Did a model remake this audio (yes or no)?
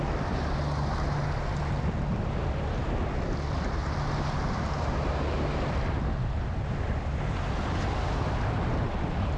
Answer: no